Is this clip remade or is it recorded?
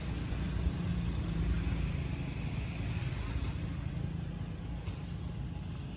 recorded